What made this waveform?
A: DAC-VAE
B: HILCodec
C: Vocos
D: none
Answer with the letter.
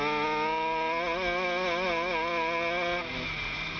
D